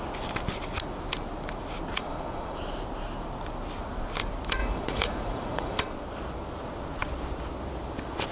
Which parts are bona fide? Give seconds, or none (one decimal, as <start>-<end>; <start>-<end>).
0.0-1.9; 2.6-4.6; 5.8-8.3